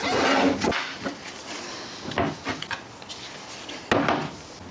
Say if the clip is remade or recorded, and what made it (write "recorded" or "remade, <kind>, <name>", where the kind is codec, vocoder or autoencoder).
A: recorded